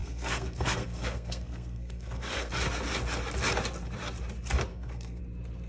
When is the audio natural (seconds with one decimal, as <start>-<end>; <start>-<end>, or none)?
2.5-4.7; 5.2-5.7